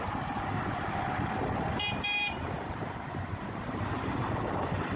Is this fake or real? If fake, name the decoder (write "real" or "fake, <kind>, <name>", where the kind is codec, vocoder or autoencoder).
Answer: fake, vocoder, BigVGAN v2